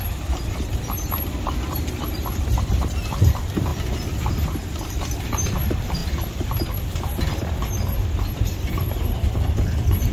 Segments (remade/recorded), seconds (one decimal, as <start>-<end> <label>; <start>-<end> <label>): 0.0-3.7 remade; 3.7-4.9 recorded; 4.9-10.1 remade